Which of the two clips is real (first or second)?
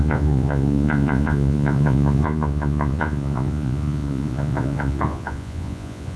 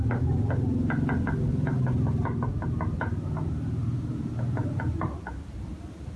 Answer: second